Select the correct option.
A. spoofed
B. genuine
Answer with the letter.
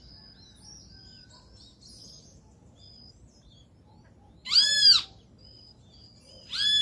B